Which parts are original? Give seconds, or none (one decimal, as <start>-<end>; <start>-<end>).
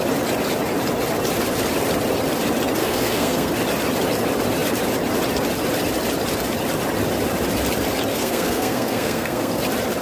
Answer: 0.0-2.8; 3.5-8.1; 9.6-10.0